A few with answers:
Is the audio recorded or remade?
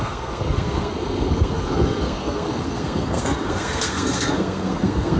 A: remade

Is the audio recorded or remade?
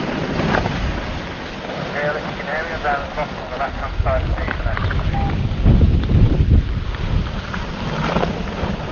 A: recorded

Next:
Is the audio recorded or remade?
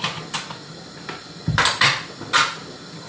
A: recorded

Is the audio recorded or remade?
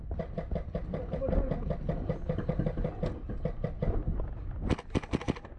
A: recorded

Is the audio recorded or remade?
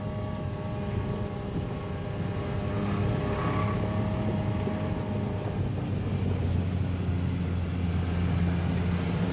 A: recorded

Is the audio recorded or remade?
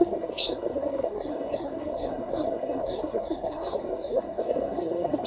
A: remade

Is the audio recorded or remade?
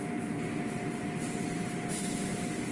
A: recorded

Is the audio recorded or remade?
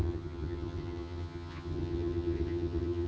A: remade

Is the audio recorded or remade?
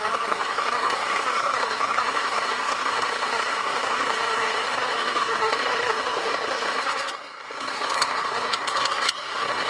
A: remade